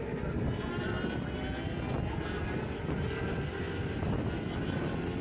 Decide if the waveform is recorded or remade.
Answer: recorded